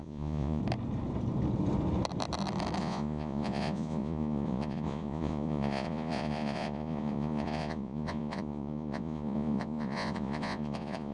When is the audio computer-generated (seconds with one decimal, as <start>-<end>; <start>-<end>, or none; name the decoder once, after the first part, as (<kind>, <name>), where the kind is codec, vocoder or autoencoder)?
0.0-0.6 (vocoder, Vocos); 2.8-11.1